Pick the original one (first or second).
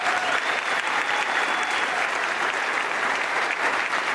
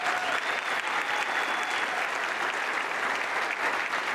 second